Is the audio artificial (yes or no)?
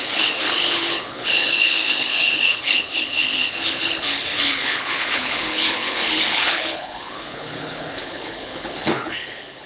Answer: yes